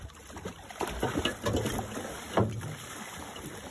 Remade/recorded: recorded